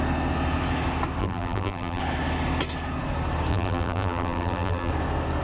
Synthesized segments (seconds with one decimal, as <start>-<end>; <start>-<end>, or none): 1.2-2.0; 3.5-4.9